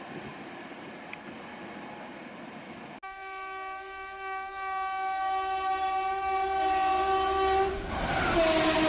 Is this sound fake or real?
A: real